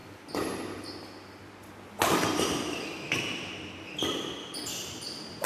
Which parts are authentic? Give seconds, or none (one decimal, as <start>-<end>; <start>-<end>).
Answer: 0.0-5.5